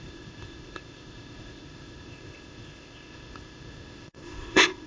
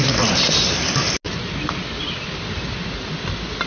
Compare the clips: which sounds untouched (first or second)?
second